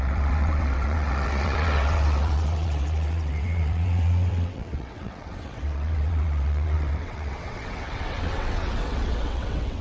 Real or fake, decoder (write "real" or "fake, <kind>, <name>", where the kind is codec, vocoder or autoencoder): fake, vocoder, WaveNeXt